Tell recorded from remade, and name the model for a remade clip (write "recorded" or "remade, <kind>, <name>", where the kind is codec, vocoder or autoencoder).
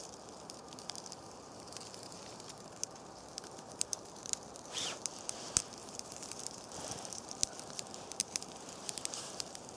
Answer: remade, vocoder, BigVGAN v2